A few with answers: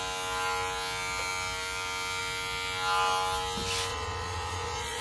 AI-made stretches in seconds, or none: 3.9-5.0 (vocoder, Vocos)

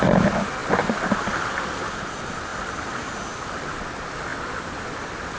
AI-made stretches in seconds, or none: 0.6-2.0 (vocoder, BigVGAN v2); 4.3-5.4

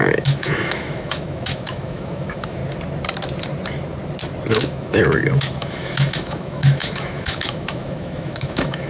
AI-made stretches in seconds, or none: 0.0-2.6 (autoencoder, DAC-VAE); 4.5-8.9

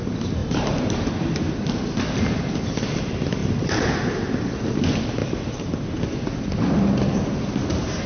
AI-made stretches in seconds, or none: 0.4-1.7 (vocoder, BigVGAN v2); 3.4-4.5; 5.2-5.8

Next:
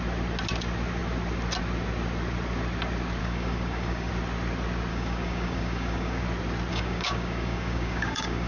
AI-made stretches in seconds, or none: 3.2-4.1 (codec, DAC); 4.9-6.2; 6.7-8.5